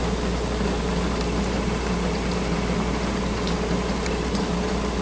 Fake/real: real